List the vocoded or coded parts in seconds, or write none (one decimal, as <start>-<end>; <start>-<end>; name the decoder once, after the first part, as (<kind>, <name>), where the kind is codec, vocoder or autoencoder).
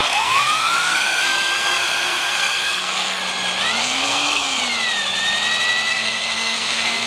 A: 0.0-3.2 (codec, SNAC); 3.8-4.6; 5.9-7.1